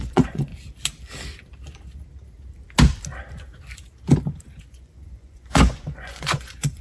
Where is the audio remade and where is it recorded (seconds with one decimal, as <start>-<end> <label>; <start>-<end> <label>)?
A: 0.0-0.5 remade; 0.5-4.6 recorded; 4.6-6.8 remade